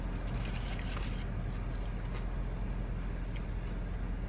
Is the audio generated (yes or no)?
no